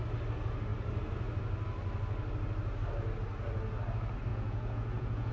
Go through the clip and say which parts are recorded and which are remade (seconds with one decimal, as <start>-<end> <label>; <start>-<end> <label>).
0.0-4.3 recorded; 4.3-5.3 remade